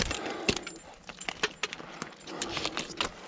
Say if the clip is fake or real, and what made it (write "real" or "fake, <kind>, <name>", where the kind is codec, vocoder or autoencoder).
real